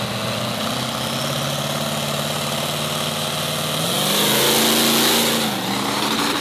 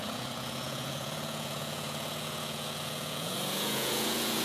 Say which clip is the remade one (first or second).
second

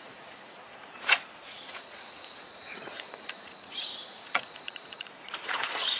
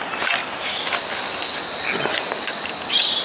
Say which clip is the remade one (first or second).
first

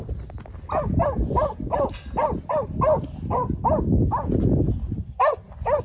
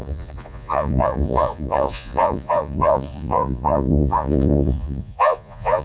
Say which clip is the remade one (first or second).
second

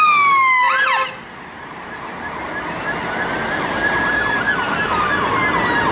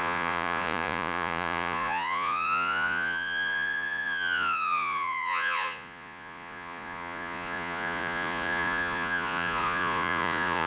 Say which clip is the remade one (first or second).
second